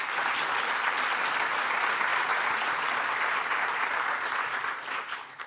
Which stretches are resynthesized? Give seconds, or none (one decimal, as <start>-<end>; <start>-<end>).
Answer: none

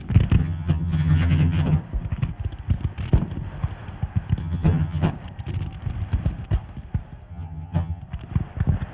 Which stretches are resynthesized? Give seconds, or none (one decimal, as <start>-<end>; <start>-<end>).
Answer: 0.4-1.8; 4.4-5.1; 7.3-8.0

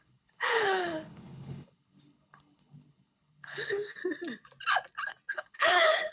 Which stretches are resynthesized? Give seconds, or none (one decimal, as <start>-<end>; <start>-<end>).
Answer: 0.0-4.0; 5.3-6.1

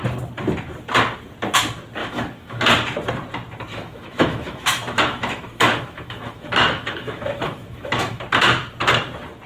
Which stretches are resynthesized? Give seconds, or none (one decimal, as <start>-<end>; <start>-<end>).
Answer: 2.0-2.6; 3.7-8.2